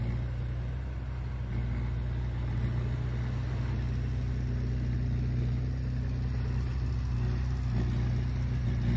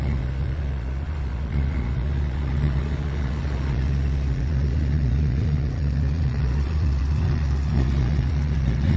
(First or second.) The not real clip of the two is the second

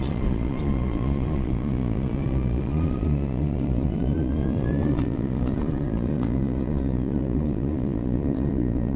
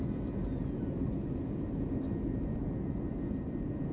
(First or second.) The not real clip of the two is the first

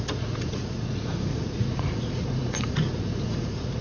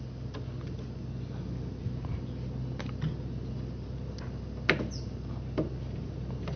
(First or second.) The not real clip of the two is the first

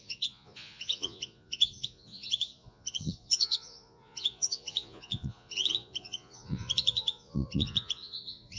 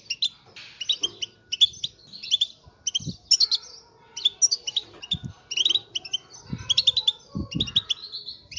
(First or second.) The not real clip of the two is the first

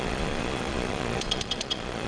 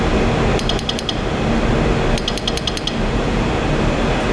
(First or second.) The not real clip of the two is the first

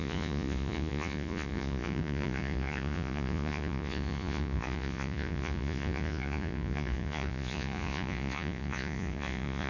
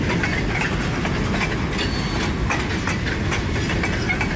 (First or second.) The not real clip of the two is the first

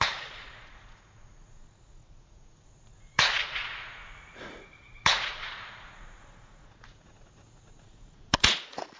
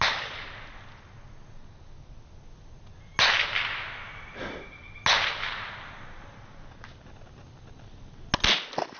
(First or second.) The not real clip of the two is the first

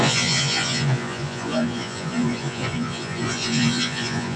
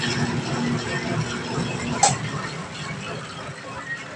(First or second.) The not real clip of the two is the first